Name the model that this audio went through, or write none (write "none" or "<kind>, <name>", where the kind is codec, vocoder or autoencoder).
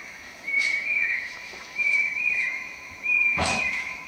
autoencoder, DAC-VAE